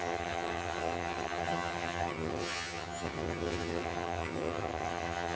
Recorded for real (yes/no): no